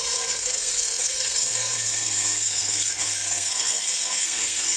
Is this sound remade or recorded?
remade